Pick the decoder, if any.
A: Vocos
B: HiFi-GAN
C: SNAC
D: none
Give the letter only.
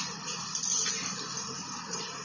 D